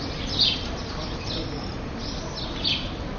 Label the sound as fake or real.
real